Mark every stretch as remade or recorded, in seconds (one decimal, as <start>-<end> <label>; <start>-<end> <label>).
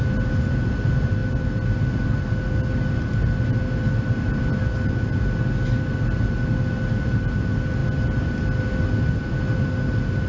0.0-10.3 recorded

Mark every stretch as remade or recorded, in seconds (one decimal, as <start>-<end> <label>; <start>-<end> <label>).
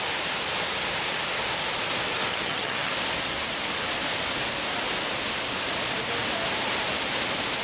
0.0-2.3 recorded; 2.3-2.9 remade; 2.9-7.6 recorded